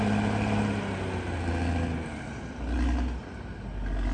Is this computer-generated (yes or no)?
no